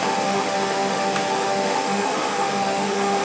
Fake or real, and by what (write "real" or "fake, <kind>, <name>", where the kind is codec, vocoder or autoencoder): fake, autoencoder, DAC-VAE